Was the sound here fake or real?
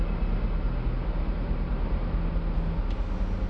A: real